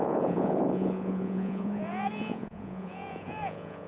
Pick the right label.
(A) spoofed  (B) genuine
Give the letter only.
A